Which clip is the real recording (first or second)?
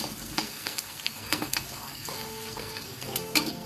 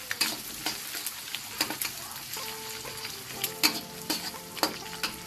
second